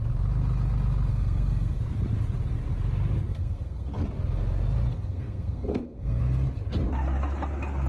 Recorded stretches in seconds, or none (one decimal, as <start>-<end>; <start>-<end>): 0.0-1.1; 1.8-3.3; 3.9-4.9; 6.2-7.9